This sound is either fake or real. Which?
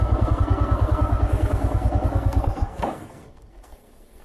fake